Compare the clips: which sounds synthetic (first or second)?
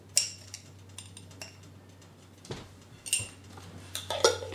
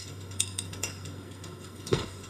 second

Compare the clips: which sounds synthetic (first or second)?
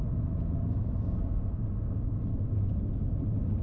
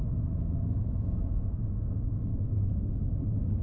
second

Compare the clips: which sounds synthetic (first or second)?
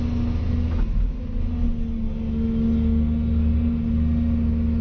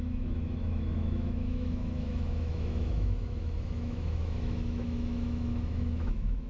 second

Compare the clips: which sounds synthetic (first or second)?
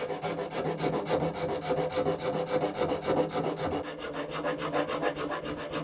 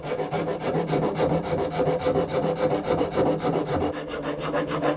second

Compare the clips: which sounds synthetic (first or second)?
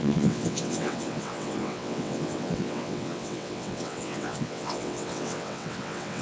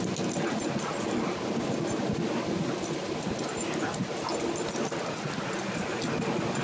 first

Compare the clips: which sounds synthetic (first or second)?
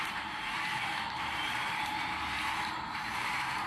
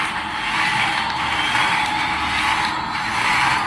first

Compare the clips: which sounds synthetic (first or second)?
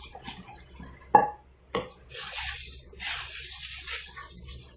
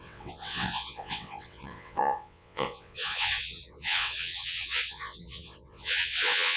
second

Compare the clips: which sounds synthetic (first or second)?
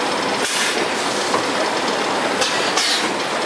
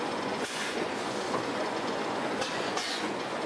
second